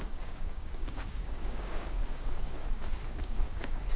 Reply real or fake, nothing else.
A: fake